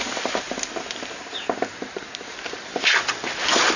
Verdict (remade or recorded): recorded